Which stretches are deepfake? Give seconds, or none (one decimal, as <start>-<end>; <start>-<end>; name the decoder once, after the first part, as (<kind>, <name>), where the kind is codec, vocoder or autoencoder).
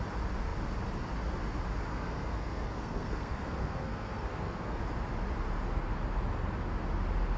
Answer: 1.9-4.8 (codec, SNAC)